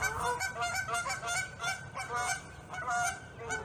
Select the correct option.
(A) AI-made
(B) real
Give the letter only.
B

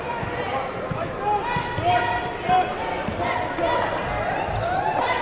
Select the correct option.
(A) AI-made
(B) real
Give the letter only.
B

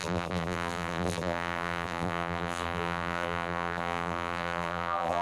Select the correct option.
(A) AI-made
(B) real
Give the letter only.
A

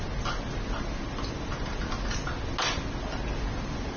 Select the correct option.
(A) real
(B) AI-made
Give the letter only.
A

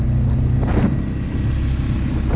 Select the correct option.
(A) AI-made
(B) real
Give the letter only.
B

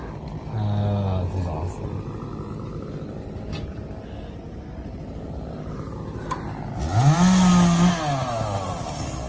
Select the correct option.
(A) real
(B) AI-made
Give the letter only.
A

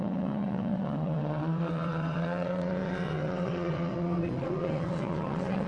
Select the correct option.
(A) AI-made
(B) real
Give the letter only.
A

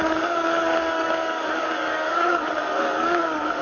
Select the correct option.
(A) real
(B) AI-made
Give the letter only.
B